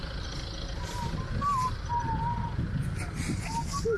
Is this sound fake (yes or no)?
no